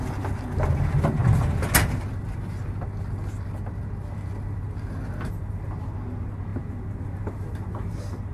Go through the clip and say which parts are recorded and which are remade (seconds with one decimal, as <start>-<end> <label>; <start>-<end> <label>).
0.0-8.3 recorded

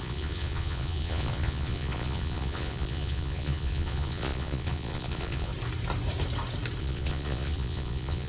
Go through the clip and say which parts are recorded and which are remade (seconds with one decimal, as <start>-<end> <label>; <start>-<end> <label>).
0.0-5.5 remade; 5.5-6.8 recorded; 6.8-8.3 remade

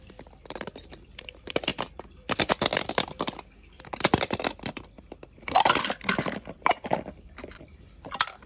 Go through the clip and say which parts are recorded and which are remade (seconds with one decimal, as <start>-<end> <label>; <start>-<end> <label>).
0.0-1.7 remade; 1.7-5.0 recorded; 5.0-8.5 remade

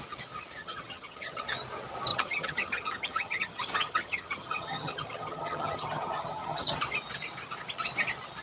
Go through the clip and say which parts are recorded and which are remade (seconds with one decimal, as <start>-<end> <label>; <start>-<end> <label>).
0.0-0.6 recorded; 0.6-1.4 remade; 1.4-2.1 recorded; 2.1-6.8 remade; 6.8-8.4 recorded

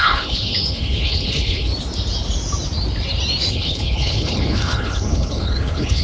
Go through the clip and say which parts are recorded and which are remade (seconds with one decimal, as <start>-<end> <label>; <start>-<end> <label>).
0.0-1.7 remade; 1.7-3.5 recorded; 3.5-6.0 remade

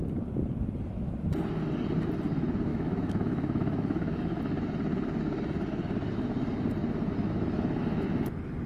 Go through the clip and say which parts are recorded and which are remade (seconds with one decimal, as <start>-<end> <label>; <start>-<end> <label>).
0.0-2.7 recorded; 2.7-4.4 remade; 4.4-8.7 recorded

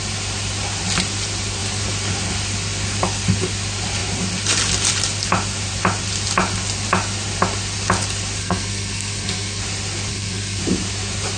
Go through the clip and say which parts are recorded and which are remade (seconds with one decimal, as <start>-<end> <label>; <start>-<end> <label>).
0.0-8.4 recorded; 8.4-9.6 remade; 9.6-10.1 recorded; 10.1-10.6 remade; 10.6-11.4 recorded

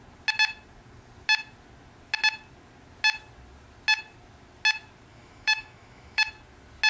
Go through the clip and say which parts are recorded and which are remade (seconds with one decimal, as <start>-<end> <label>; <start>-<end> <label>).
0.0-5.1 recorded; 5.1-6.2 remade; 6.2-6.9 recorded